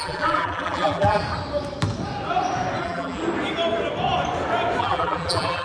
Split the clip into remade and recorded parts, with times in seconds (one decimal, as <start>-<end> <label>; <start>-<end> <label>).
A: 0.0-1.2 remade; 1.2-2.8 recorded; 2.8-3.2 remade; 3.2-4.8 recorded; 4.8-5.6 remade